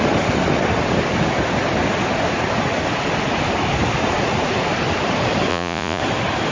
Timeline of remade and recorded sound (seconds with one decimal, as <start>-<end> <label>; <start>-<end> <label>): 0.0-5.5 recorded; 5.5-6.0 remade; 6.0-6.5 recorded

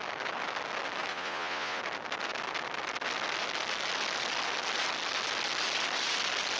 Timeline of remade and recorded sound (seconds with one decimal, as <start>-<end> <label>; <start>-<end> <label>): 0.0-1.1 recorded; 1.1-1.8 remade; 1.8-6.6 recorded